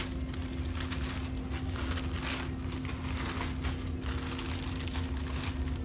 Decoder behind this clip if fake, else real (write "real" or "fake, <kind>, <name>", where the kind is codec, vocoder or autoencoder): real